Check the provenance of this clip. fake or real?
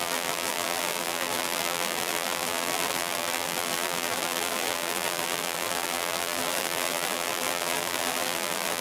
fake